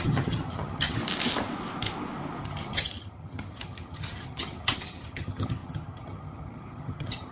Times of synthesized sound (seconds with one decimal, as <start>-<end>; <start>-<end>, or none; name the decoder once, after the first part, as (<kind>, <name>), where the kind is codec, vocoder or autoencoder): 0.0-1.0 (vocoder, HiFi-GAN); 2.4-7.3